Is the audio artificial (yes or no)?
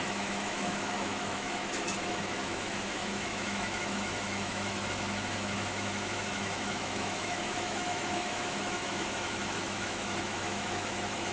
yes